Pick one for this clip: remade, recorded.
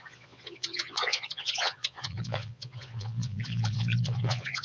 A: remade